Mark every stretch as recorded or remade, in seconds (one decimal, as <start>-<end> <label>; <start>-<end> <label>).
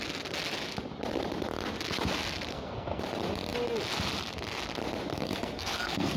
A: 0.0-2.5 recorded; 2.5-3.0 remade; 3.0-5.1 recorded; 5.1-6.2 remade